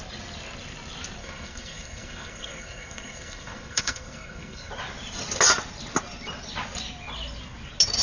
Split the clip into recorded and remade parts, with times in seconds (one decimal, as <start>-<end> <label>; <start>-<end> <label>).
0.0-1.2 recorded; 1.2-4.7 remade; 4.7-8.0 recorded